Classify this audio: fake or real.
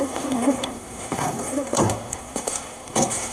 fake